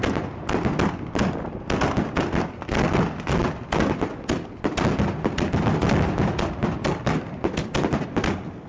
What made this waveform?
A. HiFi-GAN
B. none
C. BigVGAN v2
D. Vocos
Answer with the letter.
B